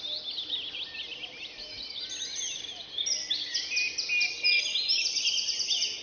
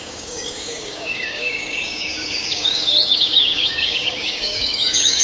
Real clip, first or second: first